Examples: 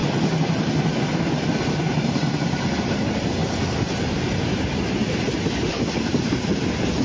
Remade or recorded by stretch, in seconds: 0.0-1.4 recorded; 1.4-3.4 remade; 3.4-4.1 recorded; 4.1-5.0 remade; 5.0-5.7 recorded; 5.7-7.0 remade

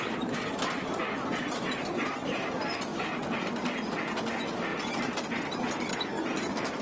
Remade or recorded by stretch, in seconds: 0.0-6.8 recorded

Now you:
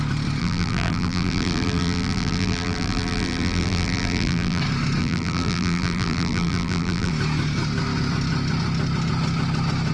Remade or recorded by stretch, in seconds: 0.0-0.4 recorded; 0.4-4.6 remade; 4.6-5.0 recorded; 5.0-7.1 remade; 7.1-9.9 recorded

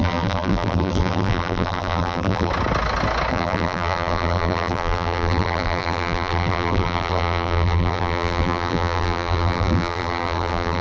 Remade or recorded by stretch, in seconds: 0.0-2.5 remade; 2.5-3.3 recorded; 3.3-10.8 remade

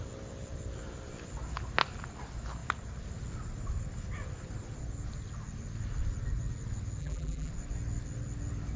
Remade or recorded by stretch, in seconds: 0.0-7.0 recorded; 7.0-7.5 remade; 7.5-8.8 recorded

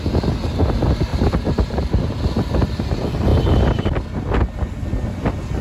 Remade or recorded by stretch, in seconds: 0.0-1.1 recorded; 1.1-2.1 remade; 2.1-5.6 recorded

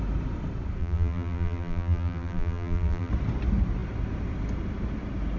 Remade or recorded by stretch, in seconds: 0.0-0.8 recorded; 0.8-3.1 remade; 3.1-5.4 recorded